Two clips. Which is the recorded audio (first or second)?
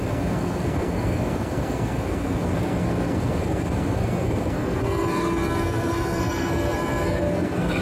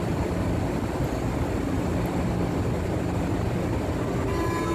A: second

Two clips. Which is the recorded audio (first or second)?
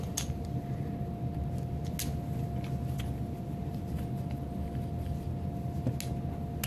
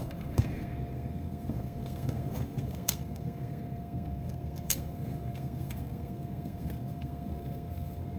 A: first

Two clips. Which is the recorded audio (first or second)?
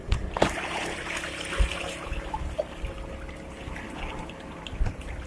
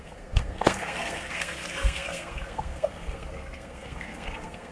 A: first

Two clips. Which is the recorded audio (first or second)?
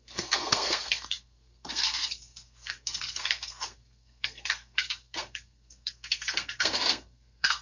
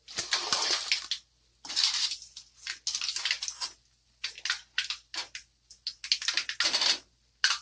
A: second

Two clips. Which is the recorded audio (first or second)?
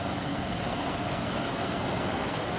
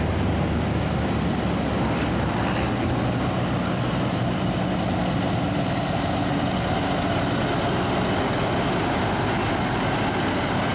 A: second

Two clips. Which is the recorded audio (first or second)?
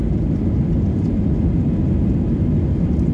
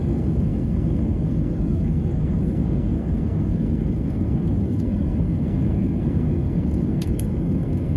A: first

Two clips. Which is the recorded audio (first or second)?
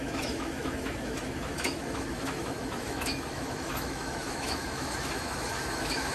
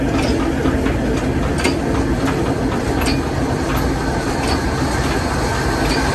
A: second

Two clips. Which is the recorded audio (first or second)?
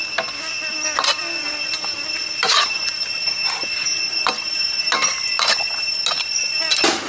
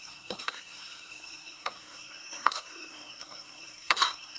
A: first